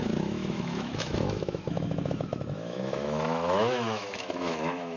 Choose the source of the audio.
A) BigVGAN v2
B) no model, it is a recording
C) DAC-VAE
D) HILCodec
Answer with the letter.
C